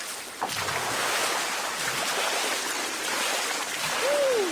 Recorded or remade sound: recorded